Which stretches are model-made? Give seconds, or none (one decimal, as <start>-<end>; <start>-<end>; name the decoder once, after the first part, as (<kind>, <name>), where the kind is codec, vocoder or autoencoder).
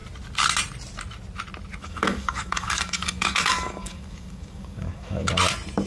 1.8-5.3 (codec, DAC)